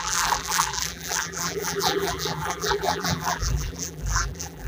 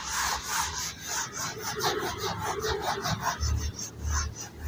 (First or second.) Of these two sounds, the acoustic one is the second